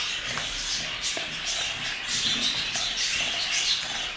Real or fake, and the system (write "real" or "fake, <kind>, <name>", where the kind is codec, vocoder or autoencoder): real